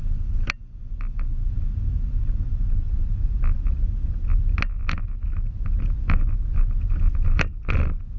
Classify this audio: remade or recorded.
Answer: recorded